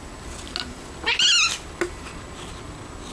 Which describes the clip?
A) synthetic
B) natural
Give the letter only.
B